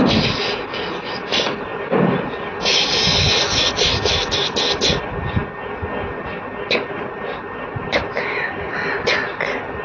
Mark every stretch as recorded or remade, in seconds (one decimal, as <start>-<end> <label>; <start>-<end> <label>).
0.0-9.8 recorded